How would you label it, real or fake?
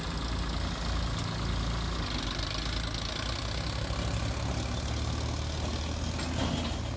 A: real